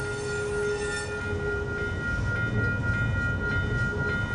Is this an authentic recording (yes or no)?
yes